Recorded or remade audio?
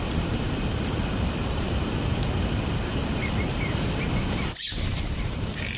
remade